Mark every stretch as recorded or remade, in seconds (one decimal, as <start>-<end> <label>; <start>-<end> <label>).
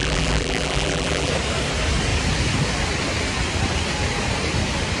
0.0-1.3 remade; 1.3-5.0 recorded